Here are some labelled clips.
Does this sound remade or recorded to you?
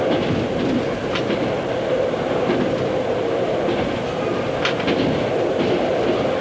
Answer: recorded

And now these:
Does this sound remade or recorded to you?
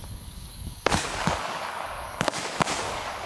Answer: remade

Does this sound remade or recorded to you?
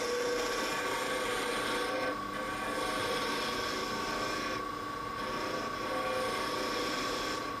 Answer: recorded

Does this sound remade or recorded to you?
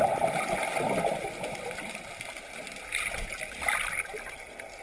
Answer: recorded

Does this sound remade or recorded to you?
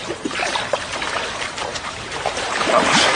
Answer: remade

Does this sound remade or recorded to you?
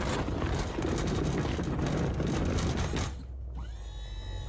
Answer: recorded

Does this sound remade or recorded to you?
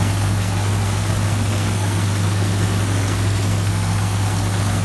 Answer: remade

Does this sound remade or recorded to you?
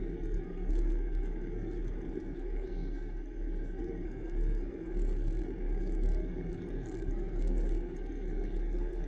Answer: remade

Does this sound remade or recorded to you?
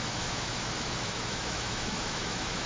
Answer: remade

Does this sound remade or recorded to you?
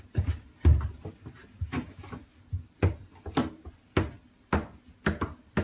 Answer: recorded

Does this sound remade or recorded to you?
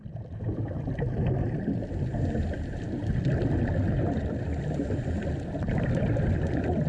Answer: remade